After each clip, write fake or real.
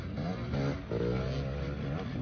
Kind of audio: real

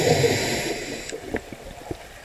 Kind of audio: real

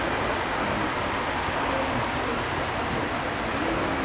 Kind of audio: real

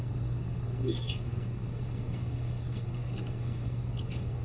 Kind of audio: fake